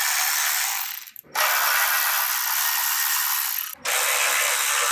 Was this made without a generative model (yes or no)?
yes